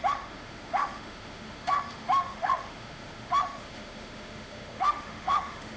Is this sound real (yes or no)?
no